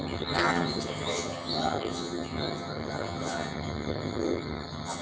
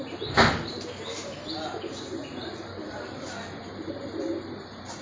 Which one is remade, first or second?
first